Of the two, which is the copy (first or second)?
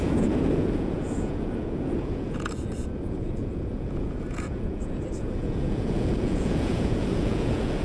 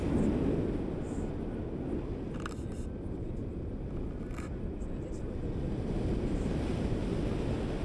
first